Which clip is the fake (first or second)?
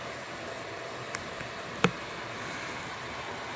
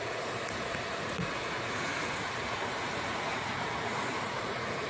second